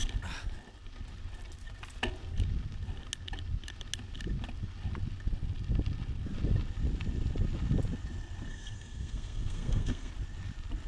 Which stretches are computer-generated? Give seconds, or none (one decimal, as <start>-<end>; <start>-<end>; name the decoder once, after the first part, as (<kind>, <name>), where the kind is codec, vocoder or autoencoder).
8.5-10.1 (codec, SNAC)